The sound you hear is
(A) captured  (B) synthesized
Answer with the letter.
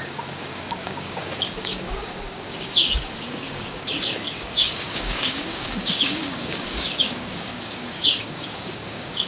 B